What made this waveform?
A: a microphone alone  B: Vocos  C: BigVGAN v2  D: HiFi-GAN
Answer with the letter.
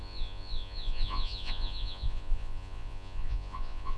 B